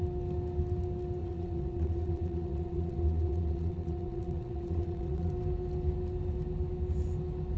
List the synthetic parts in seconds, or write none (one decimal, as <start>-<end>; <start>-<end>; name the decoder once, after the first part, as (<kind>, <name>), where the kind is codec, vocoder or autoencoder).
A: 1.2-5.3 (vocoder, WaveNeXt)

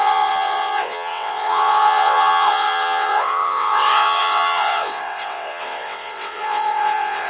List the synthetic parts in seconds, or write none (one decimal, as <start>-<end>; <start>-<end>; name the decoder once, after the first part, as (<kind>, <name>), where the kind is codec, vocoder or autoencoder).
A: 0.0-7.3 (vocoder, WaveNeXt)

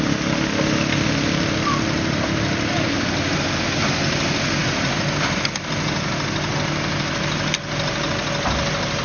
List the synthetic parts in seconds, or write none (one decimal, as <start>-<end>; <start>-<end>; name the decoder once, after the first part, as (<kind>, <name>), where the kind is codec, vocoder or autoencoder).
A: none